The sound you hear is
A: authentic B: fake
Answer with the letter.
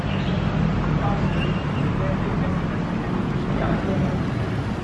A